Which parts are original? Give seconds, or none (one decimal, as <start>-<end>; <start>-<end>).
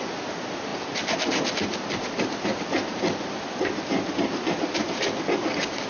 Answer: 0.0-5.9